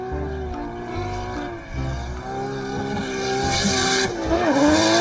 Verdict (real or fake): real